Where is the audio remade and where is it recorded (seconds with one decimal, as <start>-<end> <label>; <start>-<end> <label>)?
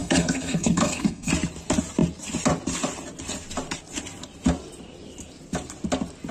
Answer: 0.0-1.3 remade; 1.3-6.3 recorded